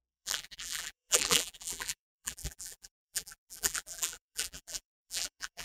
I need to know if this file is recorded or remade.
remade